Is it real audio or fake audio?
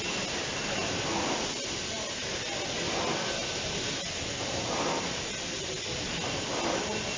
real